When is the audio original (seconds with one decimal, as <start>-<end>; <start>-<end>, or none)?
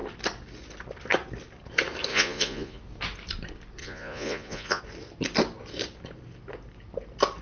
0.0-2.1; 2.8-3.8; 4.8-7.4